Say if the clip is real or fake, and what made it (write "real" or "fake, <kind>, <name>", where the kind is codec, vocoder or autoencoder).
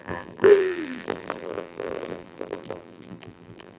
fake, vocoder, BigVGAN v2